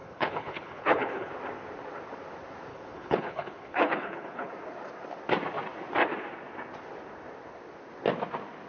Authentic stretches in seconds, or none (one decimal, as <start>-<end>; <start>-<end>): 1.3-2.7; 4.5-8.7